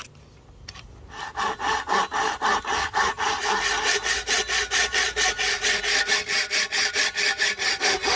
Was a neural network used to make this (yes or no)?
no